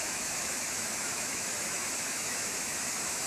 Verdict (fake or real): fake